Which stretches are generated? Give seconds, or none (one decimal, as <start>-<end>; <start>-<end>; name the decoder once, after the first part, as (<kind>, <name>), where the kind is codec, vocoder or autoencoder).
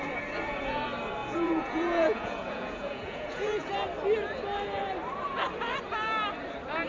1.2-3.7 (vocoder, Vocos)